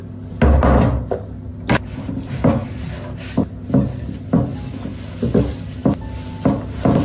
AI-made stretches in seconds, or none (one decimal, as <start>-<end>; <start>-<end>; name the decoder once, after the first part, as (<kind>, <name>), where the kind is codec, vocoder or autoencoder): none